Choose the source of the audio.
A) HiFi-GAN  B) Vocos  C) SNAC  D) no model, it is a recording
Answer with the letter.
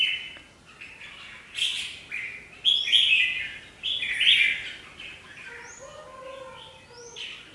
D